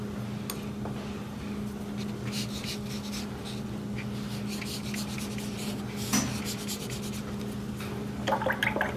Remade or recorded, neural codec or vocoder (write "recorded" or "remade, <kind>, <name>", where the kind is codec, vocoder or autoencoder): recorded